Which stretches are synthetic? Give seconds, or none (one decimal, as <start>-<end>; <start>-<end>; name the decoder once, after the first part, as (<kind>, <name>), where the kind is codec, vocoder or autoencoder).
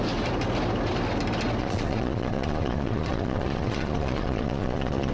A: 1.6-5.1 (vocoder, Vocos)